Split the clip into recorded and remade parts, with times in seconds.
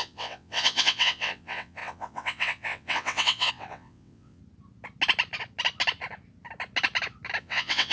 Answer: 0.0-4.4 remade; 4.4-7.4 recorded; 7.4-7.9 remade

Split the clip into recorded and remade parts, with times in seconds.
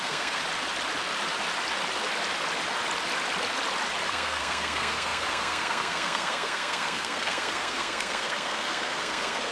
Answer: 0.0-0.4 remade; 0.4-4.1 recorded; 4.1-9.5 remade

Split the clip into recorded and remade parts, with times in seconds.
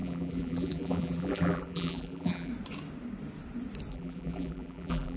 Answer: 0.0-2.5 remade; 2.5-3.9 recorded; 3.9-5.2 remade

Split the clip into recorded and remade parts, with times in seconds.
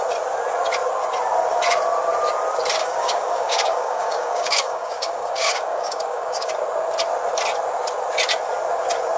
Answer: 0.0-2.8 recorded; 2.8-6.5 remade; 6.5-9.2 recorded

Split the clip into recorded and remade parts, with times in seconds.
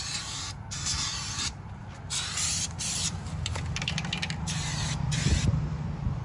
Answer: 0.0-6.2 recorded